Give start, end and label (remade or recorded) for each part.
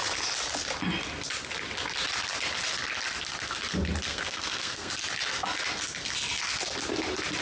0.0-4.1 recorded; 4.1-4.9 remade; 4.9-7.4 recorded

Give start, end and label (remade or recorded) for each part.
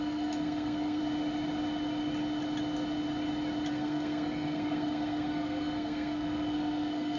0.0-1.0 remade; 1.0-3.7 recorded; 3.7-7.2 remade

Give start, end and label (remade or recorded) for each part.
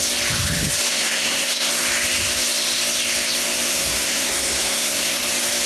0.0-0.9 recorded; 0.9-1.7 remade; 1.7-3.7 recorded; 3.7-5.2 remade; 5.2-5.7 recorded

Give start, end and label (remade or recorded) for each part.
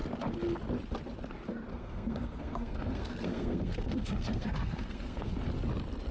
0.0-1.7 recorded; 1.7-5.3 remade; 5.3-6.1 recorded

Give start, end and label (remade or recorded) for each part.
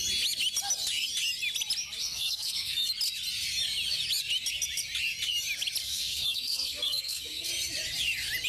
0.0-2.0 recorded; 2.0-2.9 remade; 2.9-5.8 recorded; 5.8-7.5 remade; 7.5-8.5 recorded